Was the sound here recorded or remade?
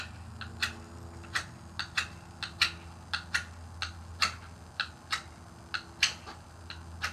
recorded